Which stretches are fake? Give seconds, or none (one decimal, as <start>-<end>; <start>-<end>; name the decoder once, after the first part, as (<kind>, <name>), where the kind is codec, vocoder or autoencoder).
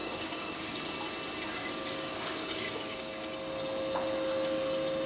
0.0-0.8 (codec, DAC); 1.5-3.1